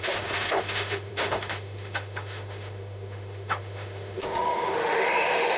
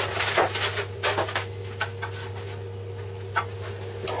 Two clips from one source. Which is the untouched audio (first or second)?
second